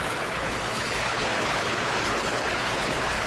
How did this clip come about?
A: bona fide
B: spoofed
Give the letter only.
B